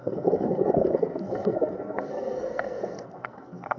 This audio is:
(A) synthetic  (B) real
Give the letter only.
A